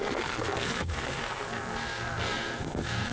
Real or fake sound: fake